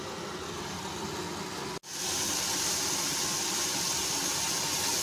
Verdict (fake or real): real